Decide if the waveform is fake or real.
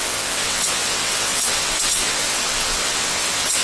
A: fake